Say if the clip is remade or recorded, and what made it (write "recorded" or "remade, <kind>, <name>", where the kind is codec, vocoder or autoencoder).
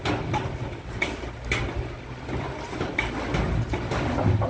recorded